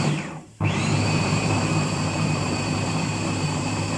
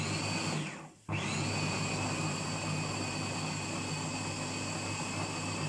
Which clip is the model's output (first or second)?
first